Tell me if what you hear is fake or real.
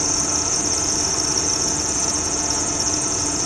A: fake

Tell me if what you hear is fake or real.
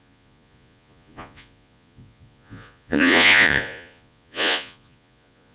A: fake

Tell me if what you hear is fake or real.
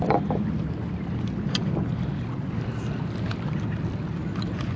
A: real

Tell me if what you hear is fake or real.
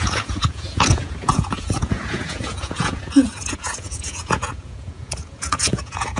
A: fake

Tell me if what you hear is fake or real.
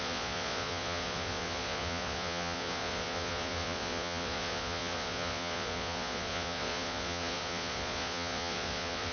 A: fake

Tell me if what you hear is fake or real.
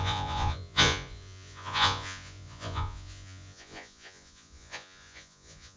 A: fake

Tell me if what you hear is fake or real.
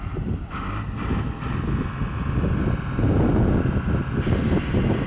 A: real